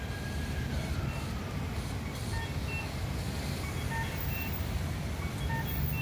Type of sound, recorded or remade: recorded